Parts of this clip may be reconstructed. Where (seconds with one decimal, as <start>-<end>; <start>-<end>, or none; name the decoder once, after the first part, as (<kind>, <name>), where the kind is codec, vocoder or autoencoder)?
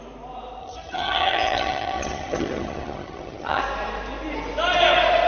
0.6-3.6 (vocoder, HiFi-GAN)